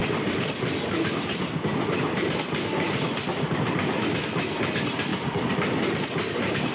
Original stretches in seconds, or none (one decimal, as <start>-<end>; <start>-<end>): 4.0-5.1; 5.8-6.7